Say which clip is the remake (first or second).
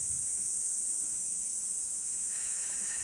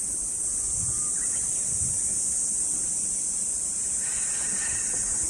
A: first